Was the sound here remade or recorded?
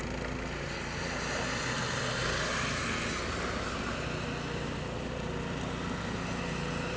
recorded